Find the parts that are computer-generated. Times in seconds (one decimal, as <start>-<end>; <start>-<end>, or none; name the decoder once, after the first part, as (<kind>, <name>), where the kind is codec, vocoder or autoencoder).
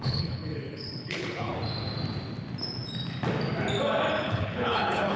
0.0-1.5 (codec, HILCodec); 4.2-5.2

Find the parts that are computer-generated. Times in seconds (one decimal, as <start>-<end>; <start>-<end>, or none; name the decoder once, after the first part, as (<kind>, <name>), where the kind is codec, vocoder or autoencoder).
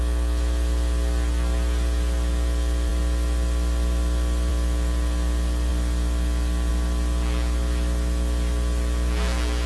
none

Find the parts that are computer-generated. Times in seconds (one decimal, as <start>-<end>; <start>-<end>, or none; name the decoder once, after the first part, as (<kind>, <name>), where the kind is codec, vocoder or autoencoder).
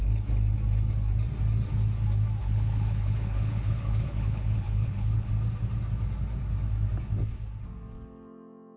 2.4-5.3 (codec, HILCodec)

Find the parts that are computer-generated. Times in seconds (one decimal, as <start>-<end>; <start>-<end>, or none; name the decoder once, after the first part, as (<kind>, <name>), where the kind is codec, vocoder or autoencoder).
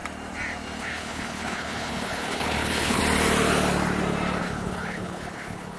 0.8-3.0 (codec, HILCodec); 4.4-5.8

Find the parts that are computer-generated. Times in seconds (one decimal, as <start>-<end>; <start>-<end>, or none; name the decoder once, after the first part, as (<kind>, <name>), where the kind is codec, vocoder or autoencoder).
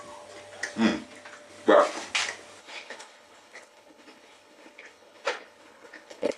2.6-6.4 (codec, HILCodec)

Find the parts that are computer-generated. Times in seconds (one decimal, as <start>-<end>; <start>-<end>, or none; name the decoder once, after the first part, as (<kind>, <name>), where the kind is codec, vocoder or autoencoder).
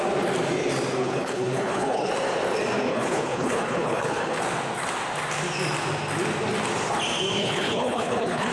1.0-2.1 (codec, HILCodec); 2.9-4.4; 7.4-8.5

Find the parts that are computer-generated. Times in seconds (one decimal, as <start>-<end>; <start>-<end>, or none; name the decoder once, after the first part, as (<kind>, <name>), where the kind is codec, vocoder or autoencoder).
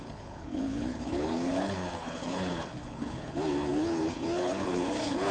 0.0-5.3 (codec, HILCodec)